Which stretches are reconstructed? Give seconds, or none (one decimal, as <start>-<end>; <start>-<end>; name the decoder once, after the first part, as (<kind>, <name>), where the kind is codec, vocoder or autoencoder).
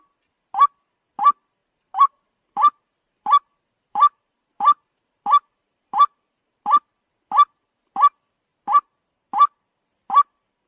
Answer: 1.6-6.8 (vocoder, BigVGAN v2); 8.5-9.3